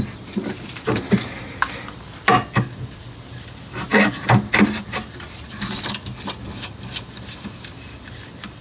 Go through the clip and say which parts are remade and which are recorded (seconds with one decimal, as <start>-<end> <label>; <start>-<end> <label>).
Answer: 0.0-8.6 remade